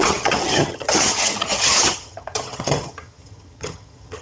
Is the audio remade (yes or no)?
yes